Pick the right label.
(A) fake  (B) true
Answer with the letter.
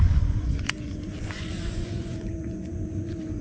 A